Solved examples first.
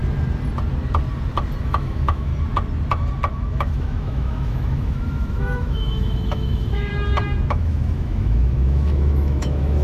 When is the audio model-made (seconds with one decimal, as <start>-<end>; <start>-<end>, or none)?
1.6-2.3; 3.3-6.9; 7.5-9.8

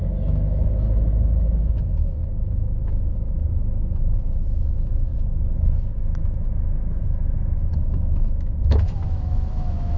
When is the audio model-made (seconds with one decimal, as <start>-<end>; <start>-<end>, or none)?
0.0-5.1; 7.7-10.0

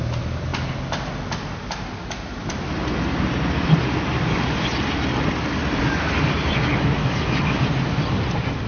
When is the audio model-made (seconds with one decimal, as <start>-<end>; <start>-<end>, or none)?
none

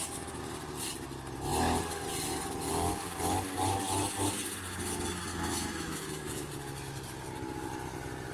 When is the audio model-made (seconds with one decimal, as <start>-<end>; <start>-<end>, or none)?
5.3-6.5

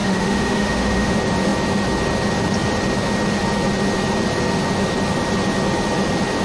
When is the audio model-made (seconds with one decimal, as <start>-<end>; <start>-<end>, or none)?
0.0-1.1